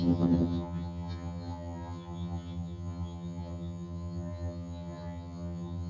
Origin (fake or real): fake